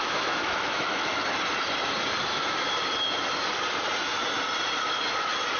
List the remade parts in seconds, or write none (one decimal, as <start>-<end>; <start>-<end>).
0.0-1.1